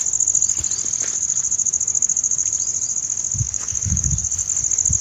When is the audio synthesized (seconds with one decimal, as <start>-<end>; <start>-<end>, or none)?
3.4-4.2